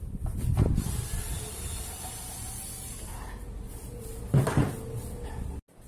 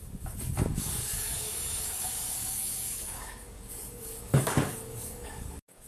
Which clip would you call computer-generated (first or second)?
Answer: second